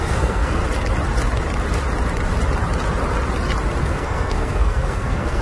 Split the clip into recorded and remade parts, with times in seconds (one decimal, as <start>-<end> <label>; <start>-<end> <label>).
0.0-0.6 remade; 0.6-3.8 recorded; 3.8-5.4 remade